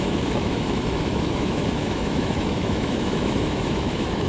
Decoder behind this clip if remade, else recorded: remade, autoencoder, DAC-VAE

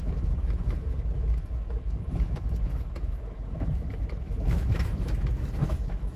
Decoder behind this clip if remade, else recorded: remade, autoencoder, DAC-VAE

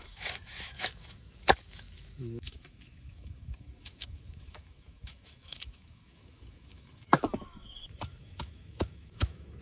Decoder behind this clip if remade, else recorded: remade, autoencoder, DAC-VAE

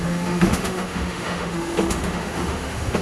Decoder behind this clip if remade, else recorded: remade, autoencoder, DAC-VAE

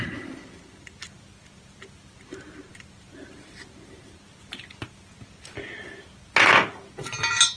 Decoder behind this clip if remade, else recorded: recorded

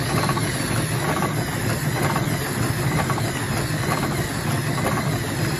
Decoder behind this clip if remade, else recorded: recorded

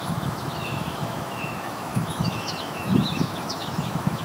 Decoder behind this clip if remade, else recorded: remade, autoencoder, DAC-VAE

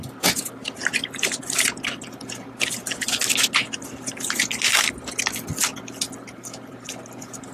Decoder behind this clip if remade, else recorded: recorded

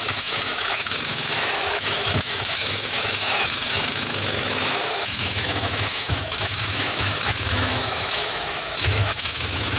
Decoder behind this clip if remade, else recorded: remade, autoencoder, DAC-VAE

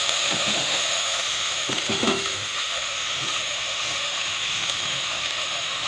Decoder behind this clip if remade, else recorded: remade, autoencoder, DAC-VAE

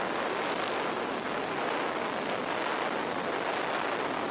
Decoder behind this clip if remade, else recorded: recorded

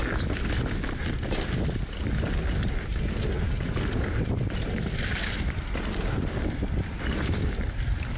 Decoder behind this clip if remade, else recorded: recorded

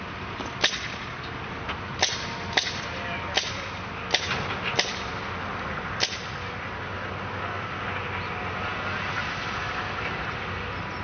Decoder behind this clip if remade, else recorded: recorded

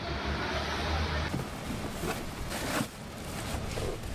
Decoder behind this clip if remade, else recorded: recorded